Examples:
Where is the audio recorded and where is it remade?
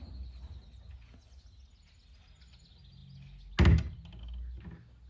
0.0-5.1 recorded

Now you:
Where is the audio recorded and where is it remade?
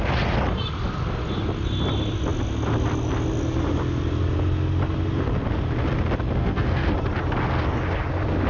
0.0-6.4 recorded; 6.4-6.9 remade; 6.9-8.5 recorded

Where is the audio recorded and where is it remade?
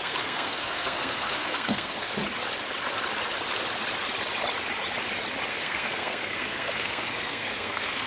0.0-2.2 remade; 2.2-5.5 recorded; 5.5-8.1 remade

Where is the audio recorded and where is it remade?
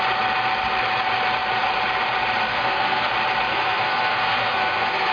0.0-2.5 recorded; 2.5-3.1 remade; 3.1-3.5 recorded; 3.5-5.1 remade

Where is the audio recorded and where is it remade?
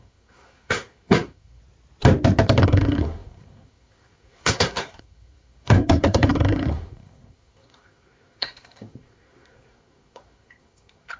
0.0-1.6 remade; 1.6-2.6 recorded; 2.6-11.2 remade